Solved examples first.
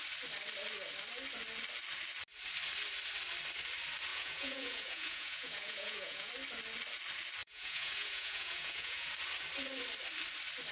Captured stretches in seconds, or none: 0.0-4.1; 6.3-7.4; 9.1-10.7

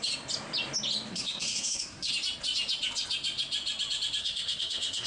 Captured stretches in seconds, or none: 0.0-1.1; 2.1-4.2

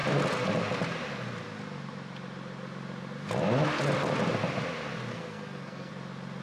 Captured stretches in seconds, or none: 0.0-5.1; 5.9-6.4

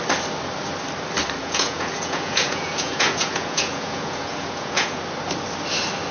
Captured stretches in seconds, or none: 0.0-1.4; 5.0-6.1

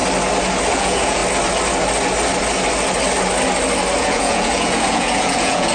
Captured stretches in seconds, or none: 0.0-0.7; 1.2-4.0

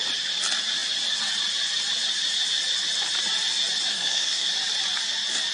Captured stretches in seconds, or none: 0.0-3.9; 4.5-5.5